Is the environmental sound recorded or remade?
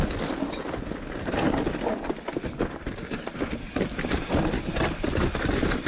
recorded